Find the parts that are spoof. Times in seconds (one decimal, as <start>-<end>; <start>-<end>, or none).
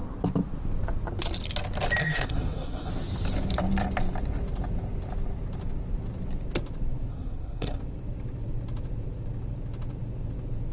2.0-2.9; 7.1-7.8